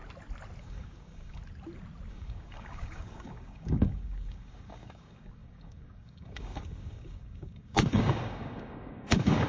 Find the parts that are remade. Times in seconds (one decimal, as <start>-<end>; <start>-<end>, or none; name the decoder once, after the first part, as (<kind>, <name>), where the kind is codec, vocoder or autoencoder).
0.6-1.4 (codec, DAC); 2.1-9.5